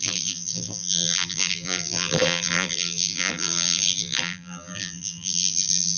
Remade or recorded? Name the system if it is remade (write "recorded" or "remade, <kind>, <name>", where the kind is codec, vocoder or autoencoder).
remade, vocoder, BigVGAN v2